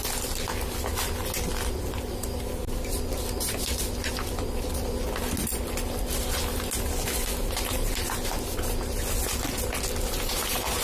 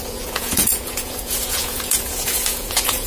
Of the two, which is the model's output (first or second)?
second